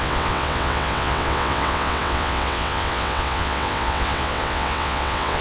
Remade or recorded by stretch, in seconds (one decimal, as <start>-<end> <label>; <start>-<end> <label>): 0.0-5.4 remade